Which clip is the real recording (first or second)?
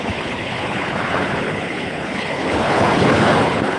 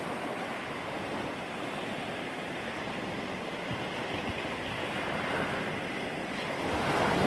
second